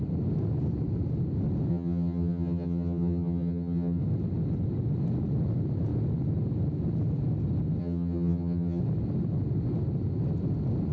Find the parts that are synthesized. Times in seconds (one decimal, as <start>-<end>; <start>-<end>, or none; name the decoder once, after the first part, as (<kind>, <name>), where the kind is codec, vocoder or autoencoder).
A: 1.7-4.0 (vocoder, HiFi-GAN); 7.8-8.8